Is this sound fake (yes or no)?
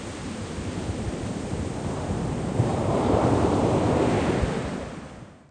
yes